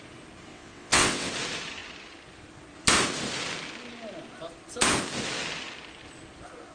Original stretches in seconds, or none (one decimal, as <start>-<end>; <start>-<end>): 0.0-0.5; 1.3-6.7